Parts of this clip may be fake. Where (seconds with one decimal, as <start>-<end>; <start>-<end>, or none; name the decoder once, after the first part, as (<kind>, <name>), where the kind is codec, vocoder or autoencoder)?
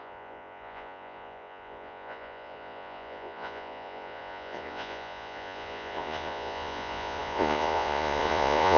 0.0-8.8 (vocoder, Vocos)